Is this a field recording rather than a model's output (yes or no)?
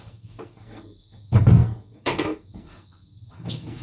no